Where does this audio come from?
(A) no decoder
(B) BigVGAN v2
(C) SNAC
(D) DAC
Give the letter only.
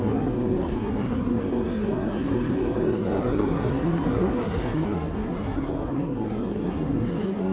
C